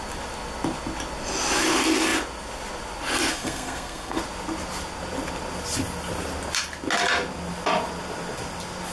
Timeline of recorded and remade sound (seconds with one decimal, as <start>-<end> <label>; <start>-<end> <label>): 0.0-3.3 recorded; 3.3-4.2 remade; 4.2-8.9 recorded